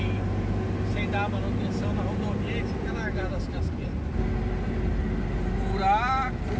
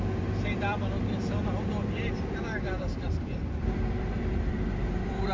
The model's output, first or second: second